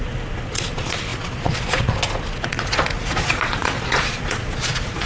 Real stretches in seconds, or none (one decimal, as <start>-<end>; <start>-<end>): none